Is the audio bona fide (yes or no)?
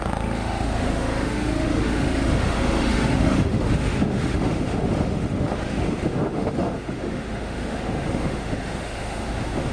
no